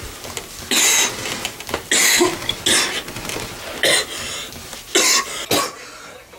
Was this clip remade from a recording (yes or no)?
no